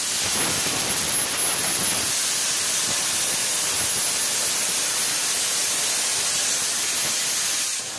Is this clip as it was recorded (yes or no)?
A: yes